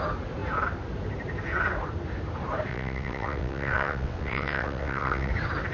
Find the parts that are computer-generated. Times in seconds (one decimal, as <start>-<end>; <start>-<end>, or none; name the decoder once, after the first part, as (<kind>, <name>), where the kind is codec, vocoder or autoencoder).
2.7-5.3 (vocoder, WaveNeXt)